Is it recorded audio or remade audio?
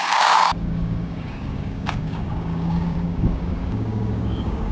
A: remade